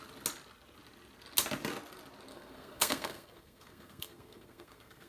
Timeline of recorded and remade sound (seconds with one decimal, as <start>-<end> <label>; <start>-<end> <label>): 0.0-2.3 recorded; 2.3-5.1 remade